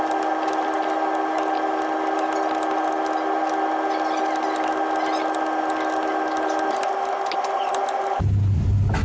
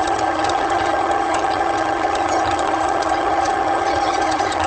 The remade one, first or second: second